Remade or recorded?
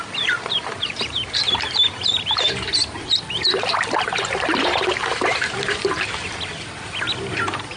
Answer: remade